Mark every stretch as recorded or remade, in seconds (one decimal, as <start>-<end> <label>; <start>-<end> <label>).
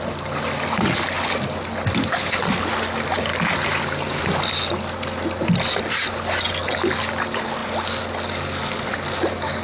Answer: 0.0-9.6 recorded